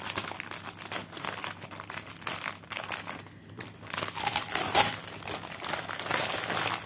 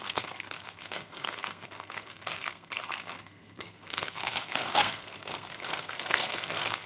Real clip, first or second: first